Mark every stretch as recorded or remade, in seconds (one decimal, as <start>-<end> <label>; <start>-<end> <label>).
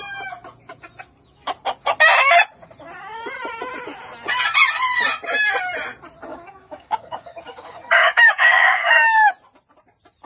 0.0-6.3 recorded; 6.3-9.3 remade; 9.3-10.3 recorded